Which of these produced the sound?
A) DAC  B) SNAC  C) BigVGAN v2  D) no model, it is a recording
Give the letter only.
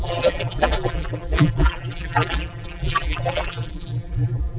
C